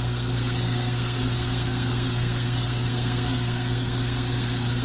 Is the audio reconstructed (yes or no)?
yes